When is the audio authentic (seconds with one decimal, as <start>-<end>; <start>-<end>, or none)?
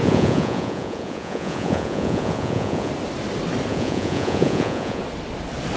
2.9-3.7; 5.0-5.8